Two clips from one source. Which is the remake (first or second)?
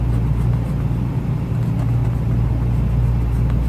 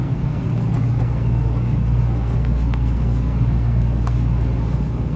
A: second